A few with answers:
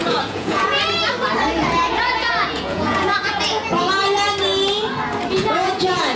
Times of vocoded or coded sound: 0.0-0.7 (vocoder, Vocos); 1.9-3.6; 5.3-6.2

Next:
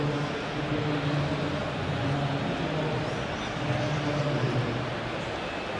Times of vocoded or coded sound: 1.6-2.3 (vocoder, Vocos)

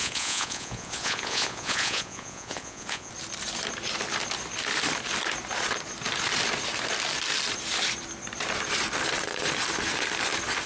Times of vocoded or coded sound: 0.0-3.1 (vocoder, Vocos)